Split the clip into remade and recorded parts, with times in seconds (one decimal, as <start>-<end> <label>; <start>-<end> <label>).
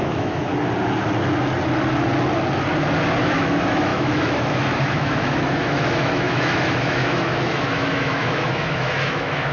0.0-0.5 remade; 0.5-3.2 recorded; 3.2-9.5 remade